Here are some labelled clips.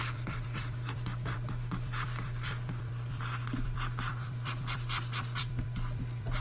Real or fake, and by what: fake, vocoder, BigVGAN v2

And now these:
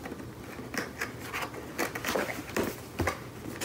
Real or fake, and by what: real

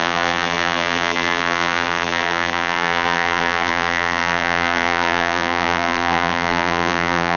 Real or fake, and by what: fake, vocoder, BigVGAN v2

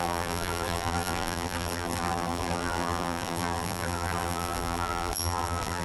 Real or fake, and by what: fake, vocoder, BigVGAN v2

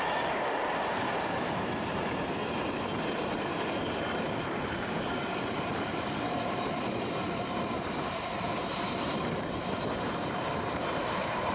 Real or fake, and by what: fake, vocoder, BigVGAN v2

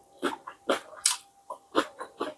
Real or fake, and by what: real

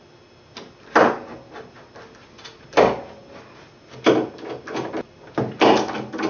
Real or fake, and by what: real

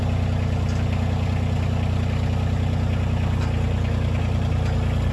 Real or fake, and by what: real